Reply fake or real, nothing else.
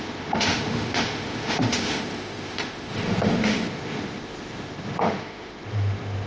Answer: fake